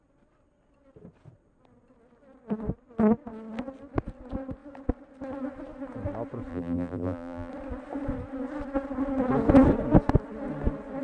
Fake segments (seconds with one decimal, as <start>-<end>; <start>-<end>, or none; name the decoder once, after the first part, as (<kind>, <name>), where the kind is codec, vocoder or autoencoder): 6.5-7.5 (vocoder, BigVGAN v2)